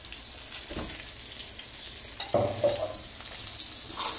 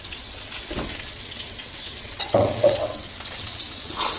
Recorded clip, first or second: first